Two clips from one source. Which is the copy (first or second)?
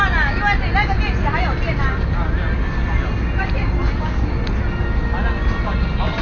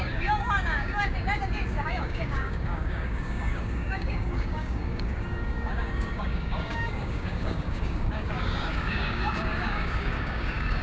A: second